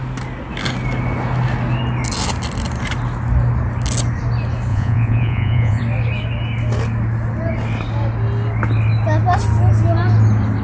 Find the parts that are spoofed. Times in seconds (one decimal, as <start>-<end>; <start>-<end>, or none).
4.7-5.8